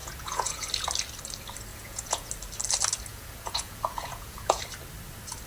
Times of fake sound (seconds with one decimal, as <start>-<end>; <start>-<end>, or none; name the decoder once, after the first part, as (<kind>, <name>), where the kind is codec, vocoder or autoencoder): 0.0-0.7 (vocoder, Vocos); 1.7-2.3; 3.1-4.6